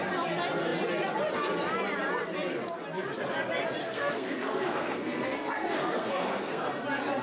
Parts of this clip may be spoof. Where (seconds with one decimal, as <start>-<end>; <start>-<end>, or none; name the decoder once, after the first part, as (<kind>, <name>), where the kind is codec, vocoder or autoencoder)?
3.8-6.6 (codec, SNAC)